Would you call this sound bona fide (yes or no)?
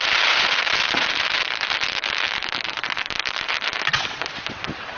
no